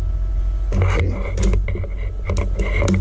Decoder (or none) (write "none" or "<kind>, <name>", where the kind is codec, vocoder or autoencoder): none